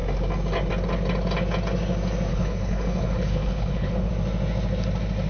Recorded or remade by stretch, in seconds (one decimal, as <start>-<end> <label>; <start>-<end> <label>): 0.0-2.3 recorded; 2.3-4.1 remade; 4.1-5.3 recorded